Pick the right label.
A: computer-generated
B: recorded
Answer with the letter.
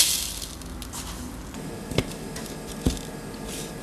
B